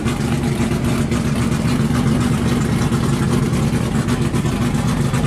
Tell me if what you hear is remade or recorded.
recorded